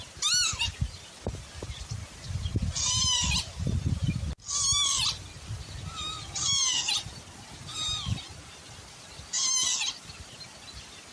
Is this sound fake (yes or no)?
no